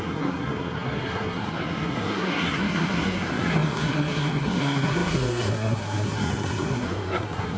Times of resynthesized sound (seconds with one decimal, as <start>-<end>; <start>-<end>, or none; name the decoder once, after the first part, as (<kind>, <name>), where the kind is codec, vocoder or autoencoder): 0.0-7.6 (codec, SNAC)